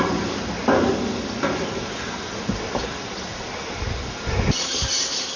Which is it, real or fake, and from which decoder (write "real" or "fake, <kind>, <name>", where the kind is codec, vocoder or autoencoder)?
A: real